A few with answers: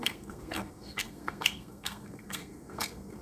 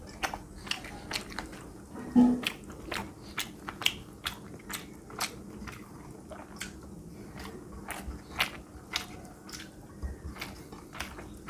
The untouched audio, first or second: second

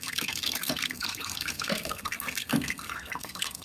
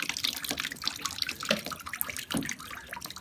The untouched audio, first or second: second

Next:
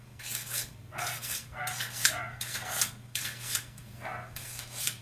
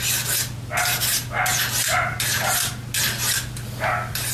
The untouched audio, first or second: second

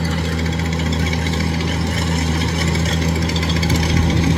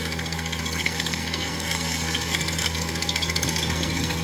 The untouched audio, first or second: first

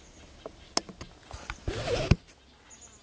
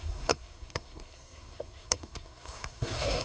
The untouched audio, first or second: first